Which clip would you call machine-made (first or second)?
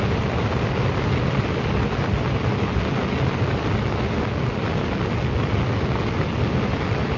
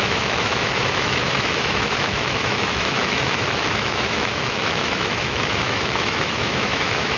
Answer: second